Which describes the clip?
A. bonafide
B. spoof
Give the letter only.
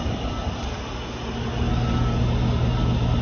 A